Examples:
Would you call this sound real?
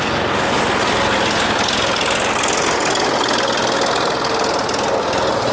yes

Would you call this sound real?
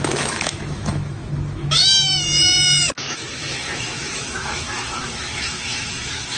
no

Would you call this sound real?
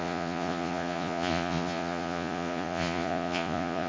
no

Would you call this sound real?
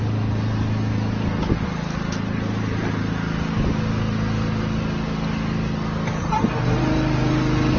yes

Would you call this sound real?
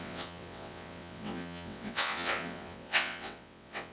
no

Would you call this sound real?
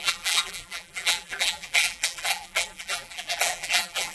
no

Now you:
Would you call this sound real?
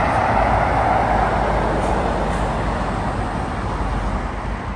yes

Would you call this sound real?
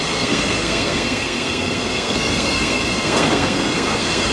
no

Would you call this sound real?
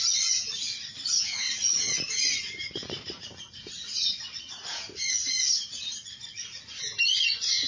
no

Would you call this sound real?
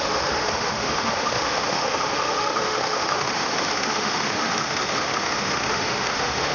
no